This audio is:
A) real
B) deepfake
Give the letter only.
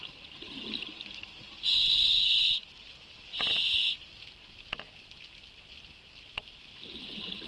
A